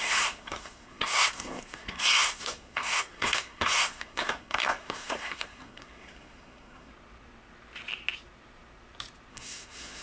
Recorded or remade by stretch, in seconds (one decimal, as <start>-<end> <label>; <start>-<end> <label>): 0.0-6.9 remade; 6.9-9.3 recorded; 9.3-10.0 remade